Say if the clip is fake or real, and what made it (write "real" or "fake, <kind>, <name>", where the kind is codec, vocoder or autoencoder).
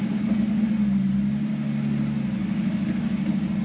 real